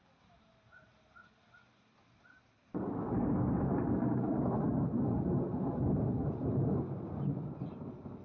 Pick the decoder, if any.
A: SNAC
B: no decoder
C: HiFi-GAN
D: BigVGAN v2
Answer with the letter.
B